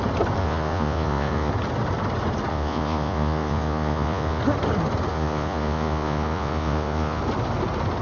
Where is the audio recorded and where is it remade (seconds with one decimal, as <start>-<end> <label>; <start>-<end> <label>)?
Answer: 0.0-0.4 recorded; 0.4-1.5 remade; 1.5-2.5 recorded; 2.5-4.4 remade; 4.4-5.1 recorded; 5.1-7.2 remade; 7.2-8.0 recorded